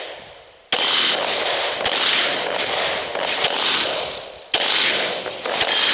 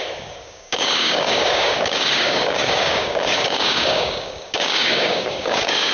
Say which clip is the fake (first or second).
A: second